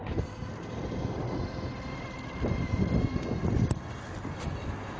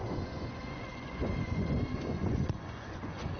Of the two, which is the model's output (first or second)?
second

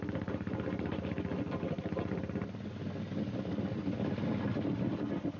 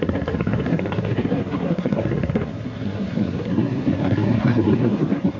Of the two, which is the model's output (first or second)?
second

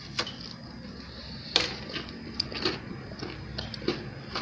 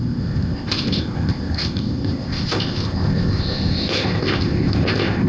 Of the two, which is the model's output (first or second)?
second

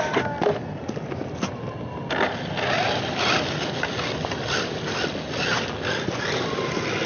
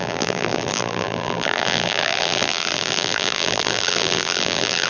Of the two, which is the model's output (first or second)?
second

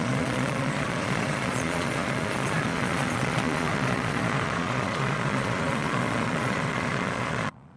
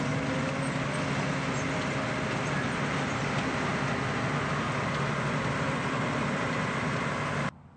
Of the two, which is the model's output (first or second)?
first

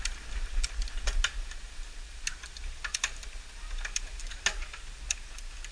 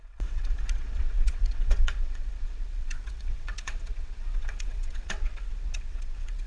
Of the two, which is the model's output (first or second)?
second